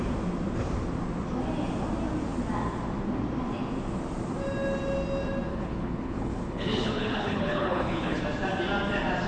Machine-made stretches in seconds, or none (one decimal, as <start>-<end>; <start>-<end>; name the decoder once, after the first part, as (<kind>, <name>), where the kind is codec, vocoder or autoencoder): 5.5-8.2 (codec, HILCodec)